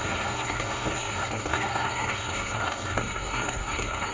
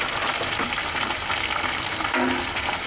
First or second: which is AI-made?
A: first